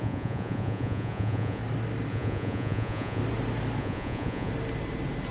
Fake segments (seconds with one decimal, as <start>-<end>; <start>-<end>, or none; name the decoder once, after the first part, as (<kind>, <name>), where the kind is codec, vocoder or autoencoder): 0.0-1.6 (vocoder, Vocos); 2.1-3.2; 3.8-4.5